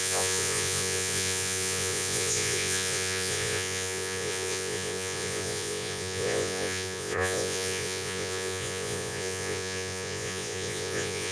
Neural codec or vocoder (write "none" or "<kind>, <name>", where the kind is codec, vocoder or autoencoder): vocoder, Vocos